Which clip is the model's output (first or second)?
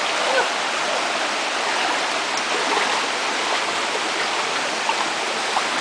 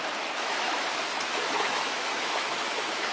second